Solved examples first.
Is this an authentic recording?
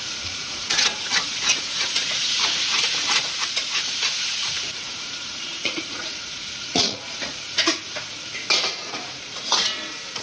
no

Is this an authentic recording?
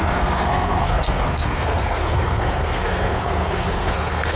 no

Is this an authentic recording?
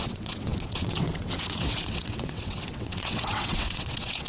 no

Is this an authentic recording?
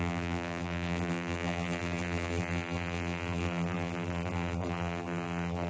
no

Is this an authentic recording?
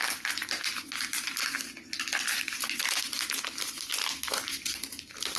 yes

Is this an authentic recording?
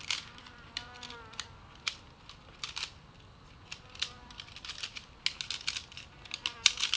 yes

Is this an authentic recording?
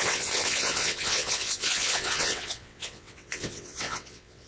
no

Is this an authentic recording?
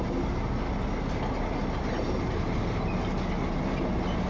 yes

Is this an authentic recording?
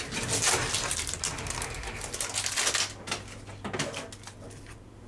yes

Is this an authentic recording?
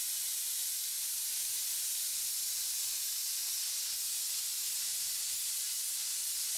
yes